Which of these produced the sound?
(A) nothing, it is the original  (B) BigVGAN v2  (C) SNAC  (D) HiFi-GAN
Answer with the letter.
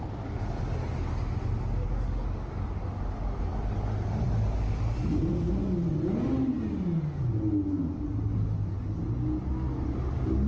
A